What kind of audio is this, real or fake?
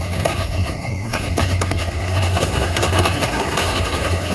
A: fake